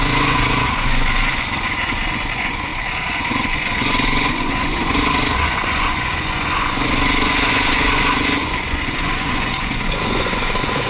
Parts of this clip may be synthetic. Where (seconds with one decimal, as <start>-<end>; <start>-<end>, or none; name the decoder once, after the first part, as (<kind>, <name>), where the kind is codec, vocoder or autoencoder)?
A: 0.0-10.9 (vocoder, Vocos)